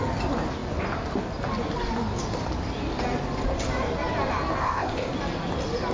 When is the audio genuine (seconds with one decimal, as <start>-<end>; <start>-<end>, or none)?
0.0-4.6; 5.1-5.9